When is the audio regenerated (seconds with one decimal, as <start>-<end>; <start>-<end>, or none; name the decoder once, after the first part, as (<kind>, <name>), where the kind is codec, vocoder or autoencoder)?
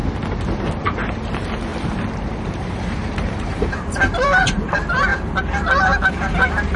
0.7-1.7 (vocoder, BigVGAN v2); 2.3-5.1; 5.8-6.8